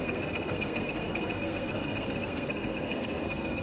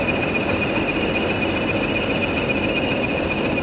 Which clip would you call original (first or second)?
second